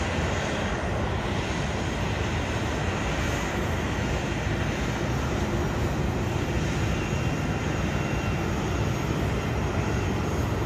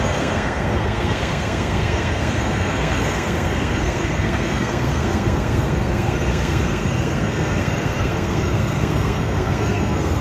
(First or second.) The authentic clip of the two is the first